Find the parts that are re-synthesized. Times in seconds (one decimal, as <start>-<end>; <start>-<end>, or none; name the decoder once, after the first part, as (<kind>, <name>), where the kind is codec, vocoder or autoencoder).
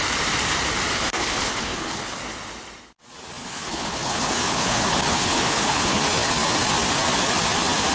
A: 0.9-2.2 (codec, HILCodec); 3.4-6.0